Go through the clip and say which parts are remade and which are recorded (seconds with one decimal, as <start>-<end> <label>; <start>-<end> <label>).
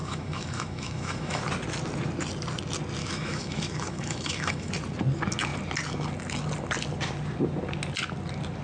0.0-1.4 remade; 1.4-3.0 recorded; 3.0-4.7 remade; 4.7-8.6 recorded